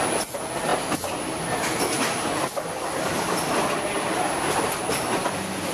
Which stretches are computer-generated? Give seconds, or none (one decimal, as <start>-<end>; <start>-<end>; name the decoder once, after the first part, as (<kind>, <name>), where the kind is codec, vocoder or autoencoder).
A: none